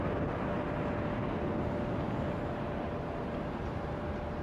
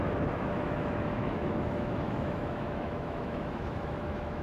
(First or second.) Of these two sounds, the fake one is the second